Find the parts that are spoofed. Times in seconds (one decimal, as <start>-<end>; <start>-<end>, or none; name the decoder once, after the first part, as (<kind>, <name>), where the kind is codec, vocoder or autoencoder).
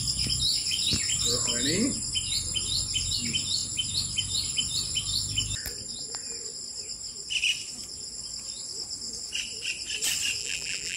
10.4-11.0 (vocoder, BigVGAN v2)